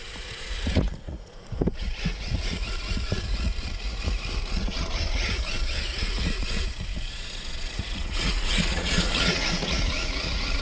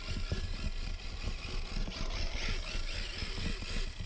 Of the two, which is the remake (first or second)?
first